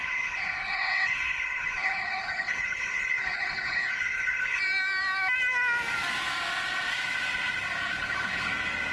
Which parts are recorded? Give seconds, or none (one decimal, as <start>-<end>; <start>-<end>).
4.6-7.9; 8.5-8.9